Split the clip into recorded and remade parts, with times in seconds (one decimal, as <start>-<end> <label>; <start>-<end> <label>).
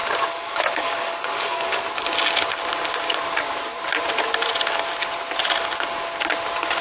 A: 0.0-1.8 remade; 1.8-6.8 recorded